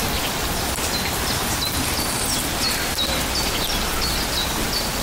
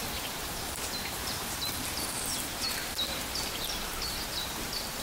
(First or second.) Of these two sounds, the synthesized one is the second